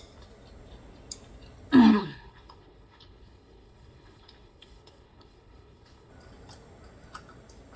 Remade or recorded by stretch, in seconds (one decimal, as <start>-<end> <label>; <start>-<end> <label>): 0.0-1.9 recorded; 1.9-6.1 remade; 6.1-7.8 recorded